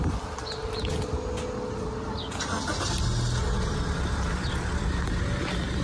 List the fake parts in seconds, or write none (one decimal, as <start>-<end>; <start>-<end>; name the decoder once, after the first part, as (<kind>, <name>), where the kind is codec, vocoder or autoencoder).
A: none